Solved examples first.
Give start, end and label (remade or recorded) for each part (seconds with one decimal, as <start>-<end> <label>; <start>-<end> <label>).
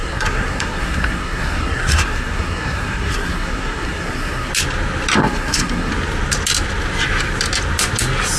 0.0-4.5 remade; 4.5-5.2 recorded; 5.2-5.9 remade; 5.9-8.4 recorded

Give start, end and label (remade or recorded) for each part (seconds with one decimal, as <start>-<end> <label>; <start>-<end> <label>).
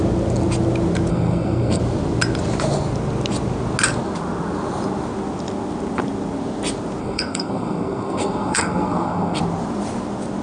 0.0-1.1 recorded; 1.1-1.8 remade; 1.8-7.0 recorded; 7.0-9.4 remade; 9.4-10.4 recorded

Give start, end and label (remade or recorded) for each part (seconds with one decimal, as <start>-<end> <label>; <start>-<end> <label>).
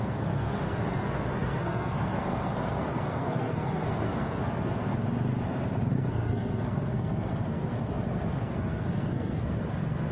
0.0-4.9 remade; 4.9-5.9 recorded; 5.9-10.1 remade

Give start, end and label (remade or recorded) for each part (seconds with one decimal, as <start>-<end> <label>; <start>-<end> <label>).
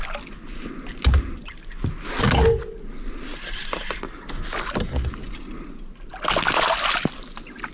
0.0-7.7 recorded